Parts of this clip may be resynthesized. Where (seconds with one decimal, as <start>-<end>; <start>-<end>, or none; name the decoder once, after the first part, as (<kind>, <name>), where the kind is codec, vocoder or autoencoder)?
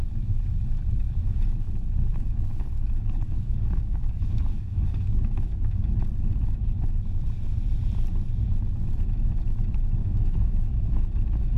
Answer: 2.1-5.9 (codec, DAC); 10.0-11.0